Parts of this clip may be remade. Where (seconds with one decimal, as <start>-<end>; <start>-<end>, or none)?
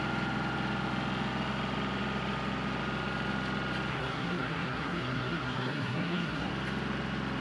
3.9-6.5